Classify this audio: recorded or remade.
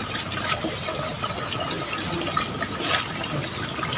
recorded